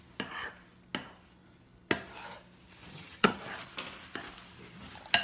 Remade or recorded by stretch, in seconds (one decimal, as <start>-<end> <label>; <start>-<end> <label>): 0.0-2.9 recorded; 2.9-3.4 remade; 3.4-5.2 recorded